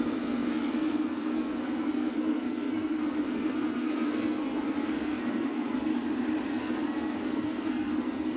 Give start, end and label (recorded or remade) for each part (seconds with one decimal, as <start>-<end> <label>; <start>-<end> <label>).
0.0-5.9 remade; 5.9-6.5 recorded; 6.5-8.4 remade